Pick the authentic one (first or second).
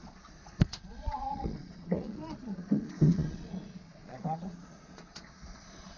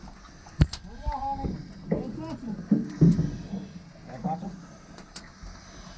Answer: second